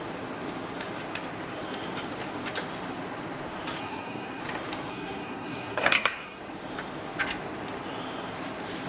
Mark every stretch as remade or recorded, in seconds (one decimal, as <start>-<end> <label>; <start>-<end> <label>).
0.0-3.8 recorded; 3.8-4.4 remade; 4.4-4.9 recorded; 4.9-6.4 remade; 6.4-8.9 recorded